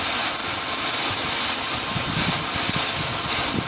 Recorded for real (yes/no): yes